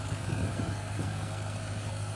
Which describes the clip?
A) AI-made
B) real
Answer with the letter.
A